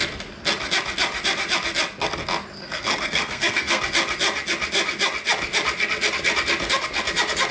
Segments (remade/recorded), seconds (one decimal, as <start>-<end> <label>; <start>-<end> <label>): 0.0-2.6 recorded; 2.6-3.8 remade; 3.8-7.5 recorded